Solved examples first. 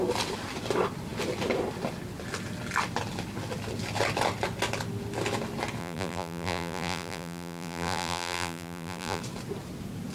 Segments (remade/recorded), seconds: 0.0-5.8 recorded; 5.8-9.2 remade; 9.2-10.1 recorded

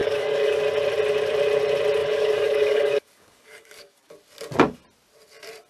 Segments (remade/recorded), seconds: 0.0-0.6 remade; 0.6-2.0 recorded; 2.0-4.1 remade; 4.1-5.7 recorded

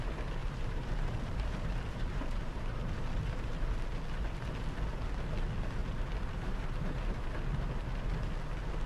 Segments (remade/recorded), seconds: 0.0-0.4 recorded; 0.4-2.8 remade; 2.8-5.8 recorded; 5.8-7.1 remade; 7.1-8.9 recorded

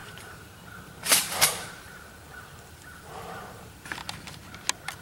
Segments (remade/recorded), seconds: 0.0-4.0 remade; 4.0-5.0 recorded

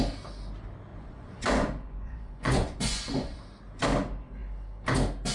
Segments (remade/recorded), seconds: 0.0-0.9 recorded; 0.9-3.4 remade; 3.4-5.3 recorded

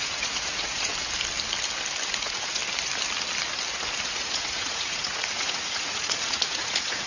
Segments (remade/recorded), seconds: 0.0-0.9 remade; 0.9-2.1 recorded; 2.1-2.6 remade; 2.6-4.0 recorded; 4.0-7.1 remade